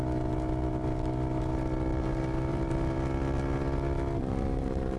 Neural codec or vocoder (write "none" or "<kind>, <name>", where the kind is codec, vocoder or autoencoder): vocoder, BigVGAN v2